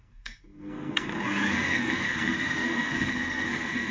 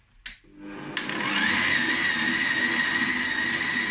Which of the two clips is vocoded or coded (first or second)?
first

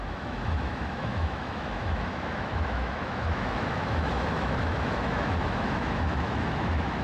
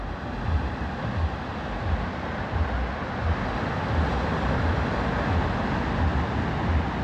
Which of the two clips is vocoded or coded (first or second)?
first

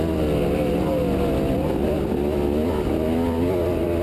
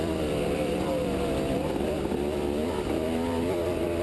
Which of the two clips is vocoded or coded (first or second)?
second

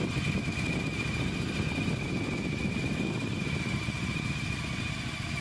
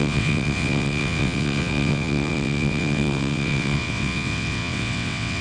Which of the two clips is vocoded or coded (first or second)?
second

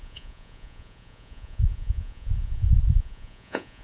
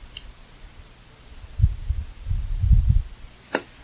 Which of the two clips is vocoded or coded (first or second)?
first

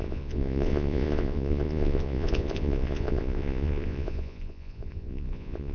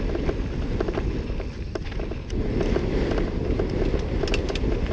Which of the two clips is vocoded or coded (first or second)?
first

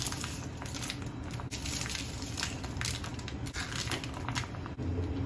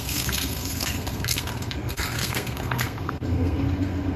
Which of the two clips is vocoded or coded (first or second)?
second